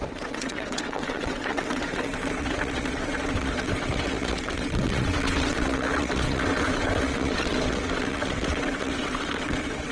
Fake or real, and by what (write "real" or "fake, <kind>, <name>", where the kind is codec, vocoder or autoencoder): fake, vocoder, WaveNeXt